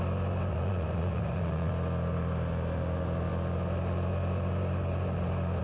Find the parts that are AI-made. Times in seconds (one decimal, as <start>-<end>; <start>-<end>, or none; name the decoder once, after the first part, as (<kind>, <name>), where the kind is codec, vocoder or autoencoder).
0.5-1.7 (vocoder, Vocos)